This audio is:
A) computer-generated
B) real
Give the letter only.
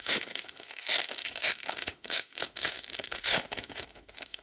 A